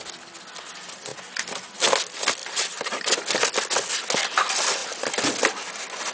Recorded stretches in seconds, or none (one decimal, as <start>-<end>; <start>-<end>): 0.0-1.1; 1.8-2.4; 3.3-6.1